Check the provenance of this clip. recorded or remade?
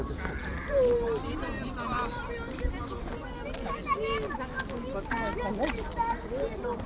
recorded